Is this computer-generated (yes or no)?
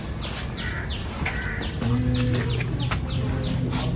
no